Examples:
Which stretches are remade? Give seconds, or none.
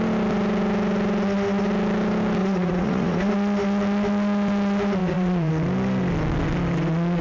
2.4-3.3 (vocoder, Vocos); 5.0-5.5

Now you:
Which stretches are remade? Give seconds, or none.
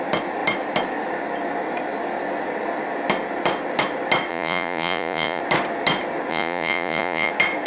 4.3-5.4 (vocoder, Vocos); 6.3-7.3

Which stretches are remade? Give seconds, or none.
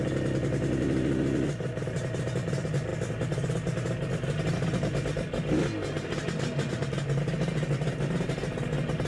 none